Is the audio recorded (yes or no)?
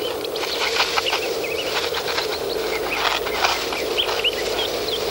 yes